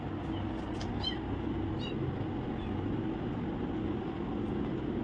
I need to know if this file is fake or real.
real